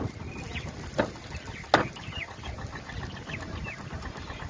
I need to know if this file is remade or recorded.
recorded